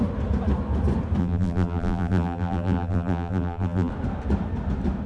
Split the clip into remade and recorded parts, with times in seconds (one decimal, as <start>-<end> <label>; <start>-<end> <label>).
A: 0.0-1.2 recorded; 1.2-3.9 remade; 3.9-5.1 recorded